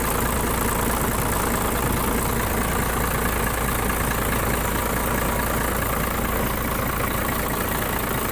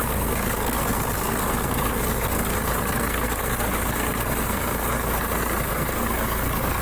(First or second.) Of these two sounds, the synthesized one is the second